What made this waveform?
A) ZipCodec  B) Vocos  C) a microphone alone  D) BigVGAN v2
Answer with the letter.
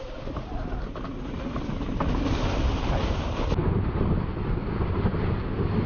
C